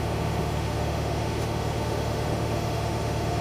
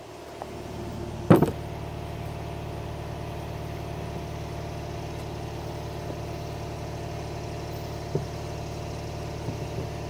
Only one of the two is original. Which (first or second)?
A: second